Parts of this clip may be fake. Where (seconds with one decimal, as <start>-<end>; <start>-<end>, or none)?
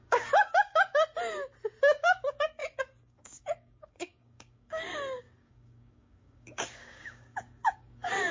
0.0-0.9; 1.8-8.3